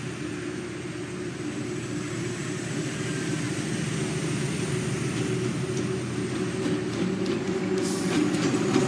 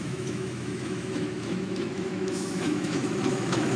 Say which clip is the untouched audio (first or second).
first